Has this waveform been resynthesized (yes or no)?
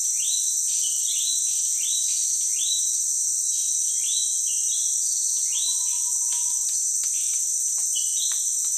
no